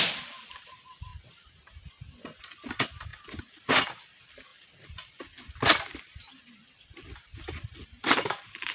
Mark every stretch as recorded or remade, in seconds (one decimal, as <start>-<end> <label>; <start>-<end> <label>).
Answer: 0.0-3.1 recorded; 3.1-3.9 remade; 3.9-4.5 recorded; 4.5-8.7 remade